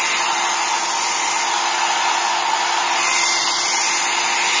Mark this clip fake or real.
real